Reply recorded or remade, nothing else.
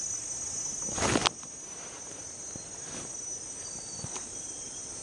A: recorded